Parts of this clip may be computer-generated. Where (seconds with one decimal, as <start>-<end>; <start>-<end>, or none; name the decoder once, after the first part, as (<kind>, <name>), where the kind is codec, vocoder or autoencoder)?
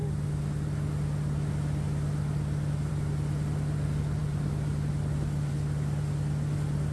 none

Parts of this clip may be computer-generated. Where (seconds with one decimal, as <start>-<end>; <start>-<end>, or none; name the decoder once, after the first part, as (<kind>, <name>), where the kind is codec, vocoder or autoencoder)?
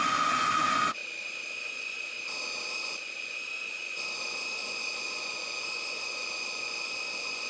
0.0-1.0 (vocoder, Vocos); 1.6-2.1; 2.8-7.5